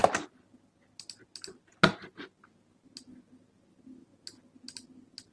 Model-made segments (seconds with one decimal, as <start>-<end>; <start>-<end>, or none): none